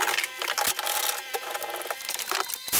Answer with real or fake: real